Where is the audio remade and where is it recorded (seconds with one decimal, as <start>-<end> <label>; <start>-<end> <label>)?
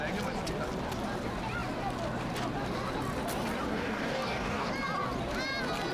0.0-3.7 recorded; 3.7-4.7 remade; 4.7-5.9 recorded